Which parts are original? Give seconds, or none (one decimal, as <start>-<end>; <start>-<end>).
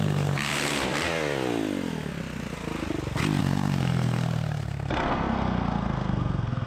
0.5-3.4